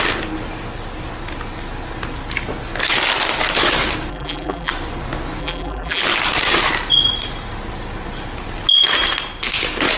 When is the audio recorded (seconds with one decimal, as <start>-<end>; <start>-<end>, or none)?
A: 0.0-4.1; 4.7-5.4; 6.0-10.0